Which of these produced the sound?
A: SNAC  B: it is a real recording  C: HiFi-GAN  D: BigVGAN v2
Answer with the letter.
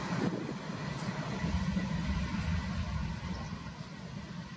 B